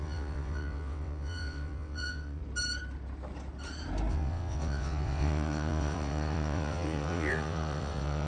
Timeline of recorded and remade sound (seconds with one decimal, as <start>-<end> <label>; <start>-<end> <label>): 0.0-2.4 remade; 2.4-4.1 recorded; 4.1-8.3 remade